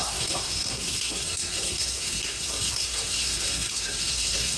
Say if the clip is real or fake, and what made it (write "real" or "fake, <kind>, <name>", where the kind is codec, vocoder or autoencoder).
fake, codec, SNAC